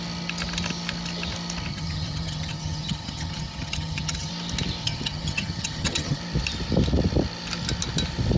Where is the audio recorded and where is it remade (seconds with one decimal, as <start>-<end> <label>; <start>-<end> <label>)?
0.0-1.7 recorded; 1.7-4.3 remade; 4.3-4.8 recorded; 4.8-6.2 remade; 6.2-8.4 recorded